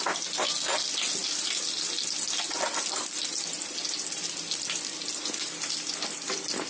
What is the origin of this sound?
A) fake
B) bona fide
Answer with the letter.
B